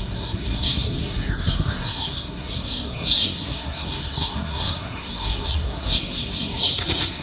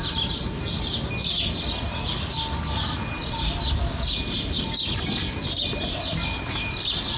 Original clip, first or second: second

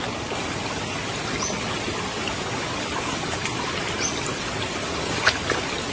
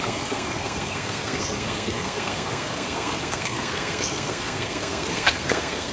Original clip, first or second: first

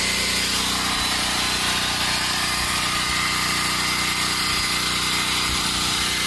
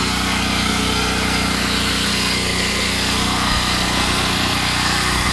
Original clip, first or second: first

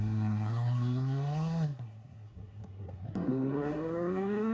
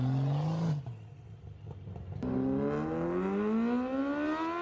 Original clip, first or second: second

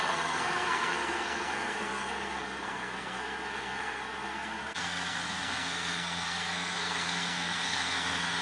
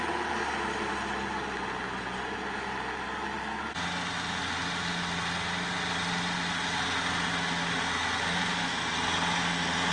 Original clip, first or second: second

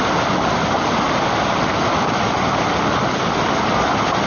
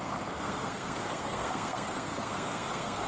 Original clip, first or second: first